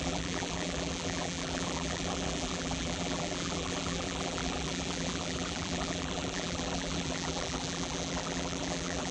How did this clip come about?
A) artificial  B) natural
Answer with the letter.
A